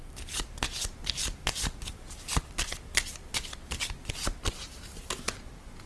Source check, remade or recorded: recorded